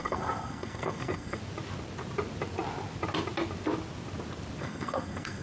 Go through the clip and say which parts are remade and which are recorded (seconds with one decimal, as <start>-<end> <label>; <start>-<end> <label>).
0.0-1.4 remade; 1.4-4.6 recorded; 4.6-5.4 remade

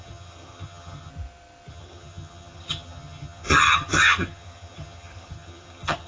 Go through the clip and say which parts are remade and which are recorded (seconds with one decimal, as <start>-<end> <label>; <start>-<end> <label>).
0.0-1.1 remade; 1.1-1.7 recorded; 1.7-6.1 remade

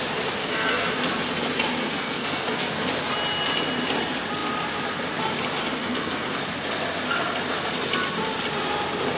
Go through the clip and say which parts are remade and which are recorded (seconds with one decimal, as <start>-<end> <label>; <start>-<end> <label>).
0.0-0.4 recorded; 0.4-0.9 remade; 0.9-1.8 recorded; 1.8-2.9 remade; 2.9-5.8 recorded; 5.8-6.4 remade; 6.4-9.2 recorded

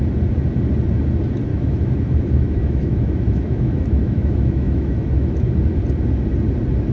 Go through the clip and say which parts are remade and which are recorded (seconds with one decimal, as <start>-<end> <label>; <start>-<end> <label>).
0.0-1.5 recorded; 1.5-5.6 remade; 5.6-6.9 recorded

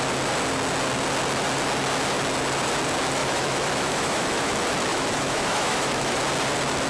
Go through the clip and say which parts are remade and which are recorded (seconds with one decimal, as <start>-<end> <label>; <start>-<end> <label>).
0.0-3.2 recorded; 3.2-4.5 remade; 4.5-4.9 recorded; 4.9-6.2 remade; 6.2-6.9 recorded